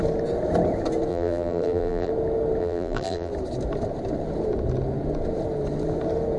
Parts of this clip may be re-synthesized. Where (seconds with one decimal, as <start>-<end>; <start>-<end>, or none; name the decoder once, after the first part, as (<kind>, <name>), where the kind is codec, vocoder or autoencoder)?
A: 1.1-2.1 (vocoder, BigVGAN v2); 2.6-3.3